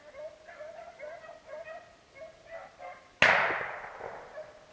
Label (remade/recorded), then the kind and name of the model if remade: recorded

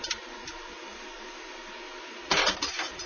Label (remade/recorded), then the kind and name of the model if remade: recorded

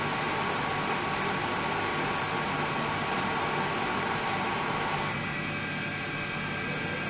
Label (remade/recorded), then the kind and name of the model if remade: recorded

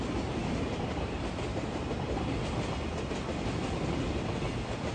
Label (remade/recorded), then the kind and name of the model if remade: recorded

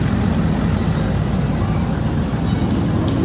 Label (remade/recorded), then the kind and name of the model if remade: recorded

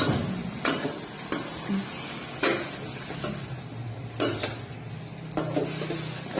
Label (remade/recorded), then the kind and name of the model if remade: recorded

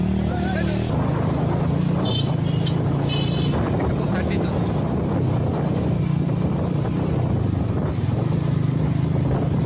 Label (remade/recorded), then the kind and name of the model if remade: recorded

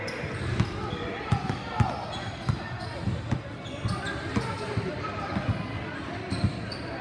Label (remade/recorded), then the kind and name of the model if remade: recorded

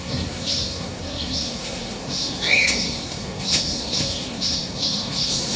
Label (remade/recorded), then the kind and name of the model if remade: remade, codec, SNAC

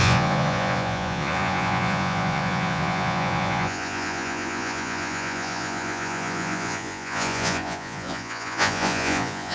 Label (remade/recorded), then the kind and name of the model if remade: remade, vocoder, Vocos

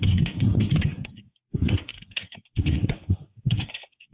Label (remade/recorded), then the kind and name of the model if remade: remade, codec, SNAC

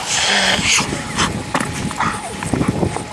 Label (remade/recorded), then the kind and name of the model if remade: recorded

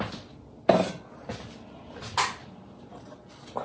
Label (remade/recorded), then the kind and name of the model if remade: recorded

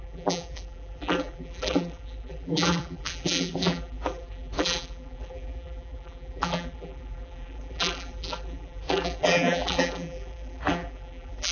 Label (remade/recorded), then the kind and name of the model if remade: remade, vocoder, BigVGAN v2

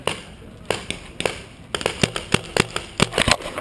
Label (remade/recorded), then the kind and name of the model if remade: recorded